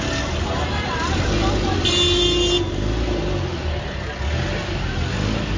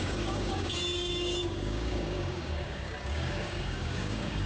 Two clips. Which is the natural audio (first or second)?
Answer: first